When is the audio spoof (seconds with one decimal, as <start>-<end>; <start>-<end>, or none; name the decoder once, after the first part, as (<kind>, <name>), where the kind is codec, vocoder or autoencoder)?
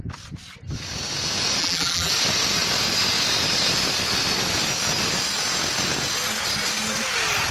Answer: 1.6-2.1 (vocoder, BigVGAN v2)